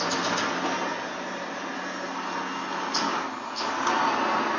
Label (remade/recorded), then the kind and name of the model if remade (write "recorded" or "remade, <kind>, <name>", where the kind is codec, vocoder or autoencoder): recorded